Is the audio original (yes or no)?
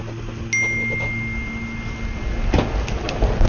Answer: yes